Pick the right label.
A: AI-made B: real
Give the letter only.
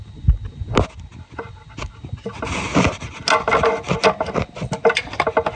B